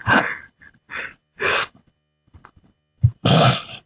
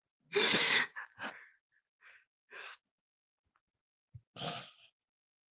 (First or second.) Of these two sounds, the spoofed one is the first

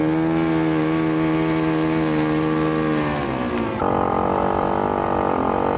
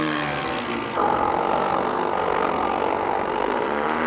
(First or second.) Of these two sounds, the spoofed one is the second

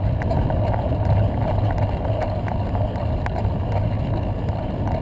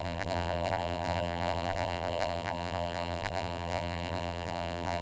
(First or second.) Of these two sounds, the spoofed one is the second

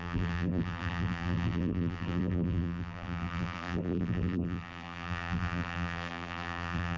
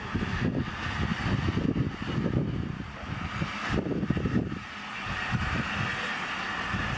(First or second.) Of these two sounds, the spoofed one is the first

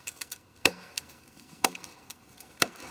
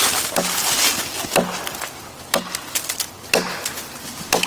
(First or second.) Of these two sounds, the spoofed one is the first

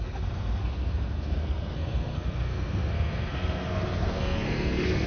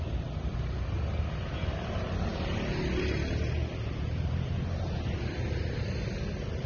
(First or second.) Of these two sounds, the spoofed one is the first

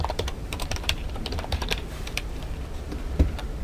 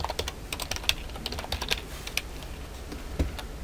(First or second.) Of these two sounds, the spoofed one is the first